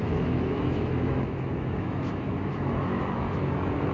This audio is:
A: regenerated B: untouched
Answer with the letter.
A